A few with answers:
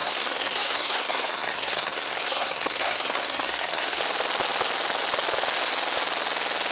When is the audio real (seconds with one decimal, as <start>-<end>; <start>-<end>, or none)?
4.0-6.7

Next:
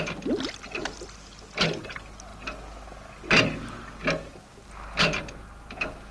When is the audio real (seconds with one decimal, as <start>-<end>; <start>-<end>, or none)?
0.0-6.1

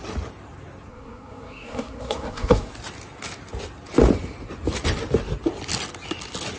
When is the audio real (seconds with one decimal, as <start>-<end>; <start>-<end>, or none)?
0.0-0.9; 2.7-6.6

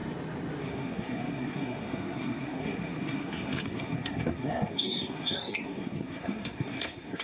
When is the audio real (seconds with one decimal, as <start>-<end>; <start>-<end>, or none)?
0.0-0.6